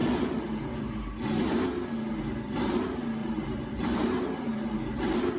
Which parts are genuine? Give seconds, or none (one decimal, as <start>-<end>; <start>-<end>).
0.0-3.2